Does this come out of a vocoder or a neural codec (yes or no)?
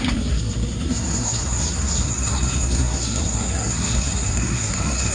yes